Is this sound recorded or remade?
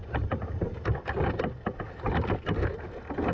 recorded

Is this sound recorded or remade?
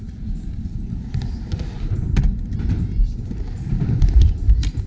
recorded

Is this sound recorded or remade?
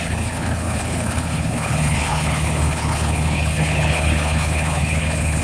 remade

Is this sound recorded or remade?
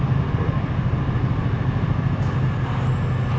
recorded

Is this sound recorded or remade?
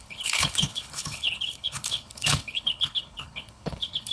remade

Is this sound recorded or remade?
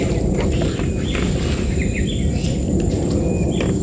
recorded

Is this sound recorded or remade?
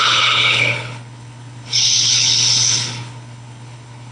remade